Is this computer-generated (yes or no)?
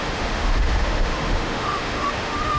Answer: yes